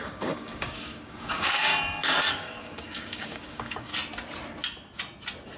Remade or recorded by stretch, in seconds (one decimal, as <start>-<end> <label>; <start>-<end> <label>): 0.0-1.7 remade; 1.7-2.3 recorded; 2.3-3.9 remade; 3.9-5.6 recorded